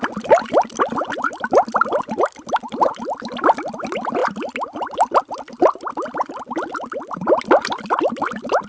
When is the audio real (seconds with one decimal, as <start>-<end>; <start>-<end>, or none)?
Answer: 0.0-8.7